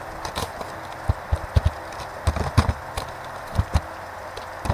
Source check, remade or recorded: recorded